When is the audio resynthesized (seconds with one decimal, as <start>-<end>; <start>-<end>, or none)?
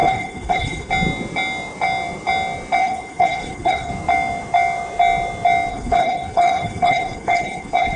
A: 0.0-0.9; 2.8-3.9; 5.7-8.0